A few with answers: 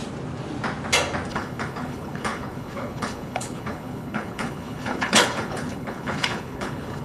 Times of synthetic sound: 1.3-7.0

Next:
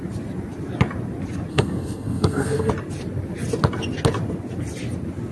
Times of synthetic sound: 1.5-2.7

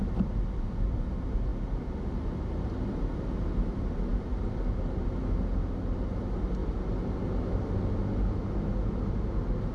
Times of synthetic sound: none

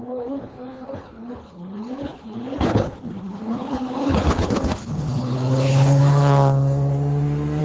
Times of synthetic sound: 0.0-6.0

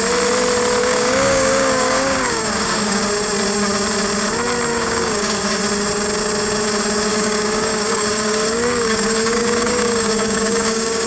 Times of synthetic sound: 0.8-3.0; 4.7-5.6; 7.1-11.1

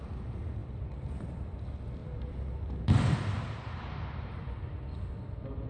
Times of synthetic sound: 2.0-4.5

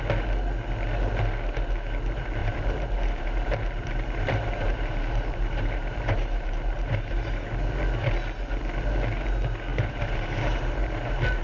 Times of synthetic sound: 2.4-7.6; 9.7-11.4